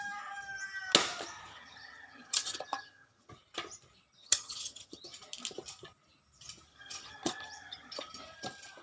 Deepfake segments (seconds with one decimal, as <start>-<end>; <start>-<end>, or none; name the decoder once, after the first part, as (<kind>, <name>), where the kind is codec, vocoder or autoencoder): 1.5-3.3 (vocoder, HiFi-GAN); 4.2-5.0; 6.7-8.1